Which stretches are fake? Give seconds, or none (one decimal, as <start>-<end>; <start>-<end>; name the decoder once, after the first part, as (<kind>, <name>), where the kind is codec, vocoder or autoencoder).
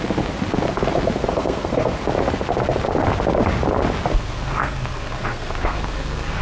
1.3-2.0 (codec, SNAC); 4.1-6.4